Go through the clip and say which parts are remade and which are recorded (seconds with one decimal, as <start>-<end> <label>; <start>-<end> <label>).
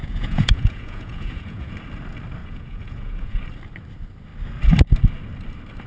0.0-1.7 remade; 1.7-2.4 recorded; 2.4-3.4 remade; 3.4-5.9 recorded